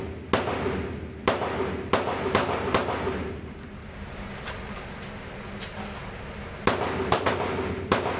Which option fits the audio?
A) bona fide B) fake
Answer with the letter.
A